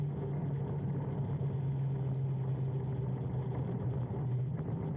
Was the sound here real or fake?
real